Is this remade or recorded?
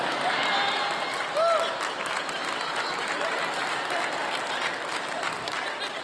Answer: recorded